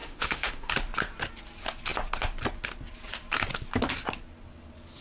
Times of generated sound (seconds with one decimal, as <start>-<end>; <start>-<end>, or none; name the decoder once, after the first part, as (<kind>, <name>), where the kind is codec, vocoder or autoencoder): 0.0-0.7 (autoencoder, DAC-VAE)